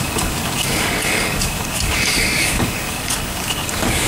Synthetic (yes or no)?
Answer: yes